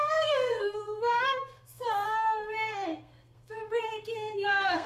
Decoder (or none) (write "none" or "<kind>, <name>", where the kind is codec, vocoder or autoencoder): codec, SNAC